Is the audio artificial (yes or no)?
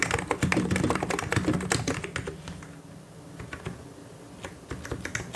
no